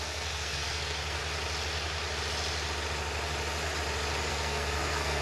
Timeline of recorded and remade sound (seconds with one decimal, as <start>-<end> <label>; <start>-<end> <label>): 0.0-1.2 remade; 1.2-4.3 recorded; 4.3-5.2 remade